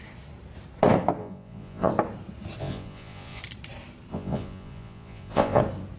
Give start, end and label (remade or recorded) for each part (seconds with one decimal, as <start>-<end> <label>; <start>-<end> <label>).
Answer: 0.0-1.2 recorded; 1.2-1.9 remade; 1.9-2.6 recorded; 2.6-3.4 remade; 3.4-4.1 recorded; 4.1-5.6 remade; 5.6-6.0 recorded